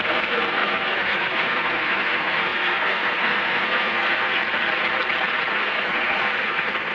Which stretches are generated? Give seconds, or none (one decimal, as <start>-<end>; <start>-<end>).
0.0-4.4; 5.5-6.9